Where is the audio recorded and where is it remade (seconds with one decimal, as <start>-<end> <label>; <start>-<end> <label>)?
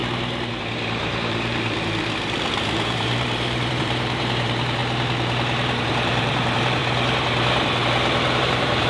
0.0-0.6 recorded; 0.6-4.8 remade; 4.8-5.8 recorded; 5.8-6.8 remade; 6.8-8.4 recorded; 8.4-8.9 remade